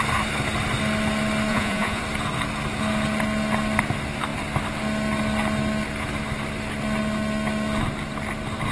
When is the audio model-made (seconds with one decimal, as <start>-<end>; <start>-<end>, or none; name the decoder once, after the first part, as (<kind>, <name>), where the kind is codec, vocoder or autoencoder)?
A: 1.5-2.0 (vocoder, Vocos)